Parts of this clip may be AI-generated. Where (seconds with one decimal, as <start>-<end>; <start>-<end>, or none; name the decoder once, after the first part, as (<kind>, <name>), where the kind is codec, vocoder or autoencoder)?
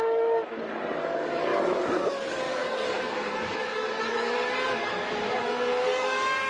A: 0.0-6.5 (codec, DAC)